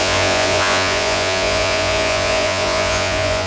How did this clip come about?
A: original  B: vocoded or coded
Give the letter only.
B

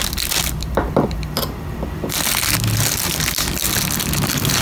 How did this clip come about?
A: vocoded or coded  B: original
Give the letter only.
B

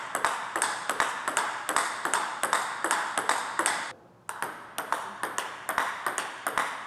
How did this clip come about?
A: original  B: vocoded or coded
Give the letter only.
A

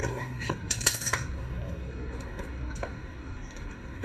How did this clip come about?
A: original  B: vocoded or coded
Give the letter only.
B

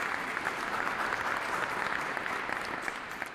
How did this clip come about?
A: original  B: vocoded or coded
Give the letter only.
A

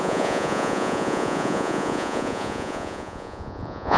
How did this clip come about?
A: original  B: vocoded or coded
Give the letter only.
B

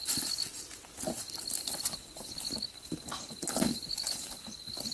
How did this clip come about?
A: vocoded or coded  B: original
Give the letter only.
B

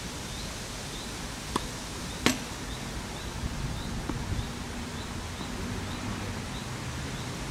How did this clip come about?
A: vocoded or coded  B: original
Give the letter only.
B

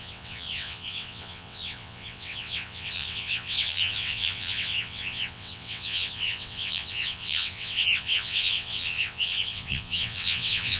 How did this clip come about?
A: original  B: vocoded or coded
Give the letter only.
B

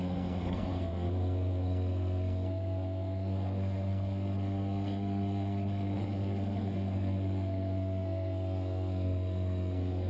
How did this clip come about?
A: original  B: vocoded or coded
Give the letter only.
B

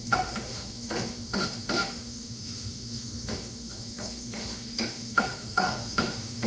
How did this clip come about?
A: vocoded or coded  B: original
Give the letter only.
A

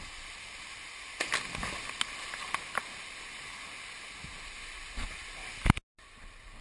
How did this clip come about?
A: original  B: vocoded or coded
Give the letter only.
A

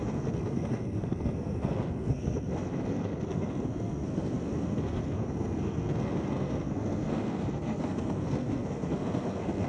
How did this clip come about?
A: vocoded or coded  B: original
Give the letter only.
A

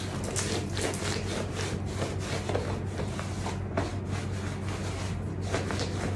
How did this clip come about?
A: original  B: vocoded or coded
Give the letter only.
A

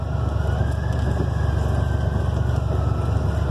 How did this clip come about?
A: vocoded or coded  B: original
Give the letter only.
B